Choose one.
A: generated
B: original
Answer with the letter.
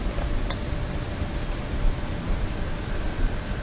B